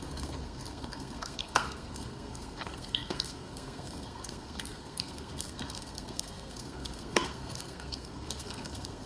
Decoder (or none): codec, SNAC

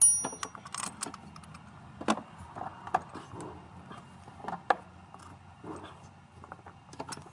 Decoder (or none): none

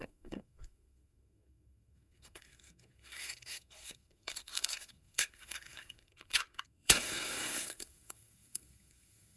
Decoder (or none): codec, SNAC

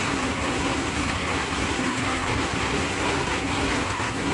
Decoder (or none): codec, SNAC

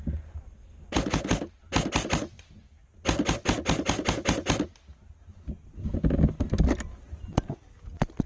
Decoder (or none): none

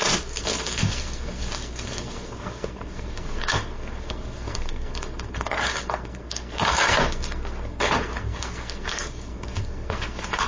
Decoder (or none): codec, SNAC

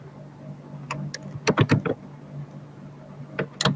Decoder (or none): none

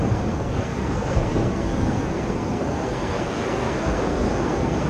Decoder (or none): codec, SNAC